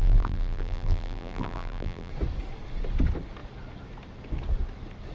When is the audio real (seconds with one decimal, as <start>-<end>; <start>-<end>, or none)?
2.1-5.1